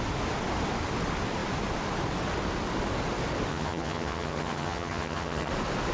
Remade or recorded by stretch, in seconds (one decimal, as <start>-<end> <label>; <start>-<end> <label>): 0.0-3.5 recorded; 3.5-5.5 remade; 5.5-5.9 recorded